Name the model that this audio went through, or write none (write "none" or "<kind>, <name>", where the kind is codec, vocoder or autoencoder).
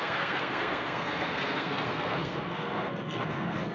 codec, SNAC